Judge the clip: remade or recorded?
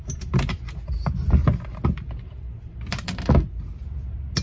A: recorded